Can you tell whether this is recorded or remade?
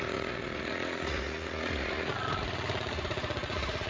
remade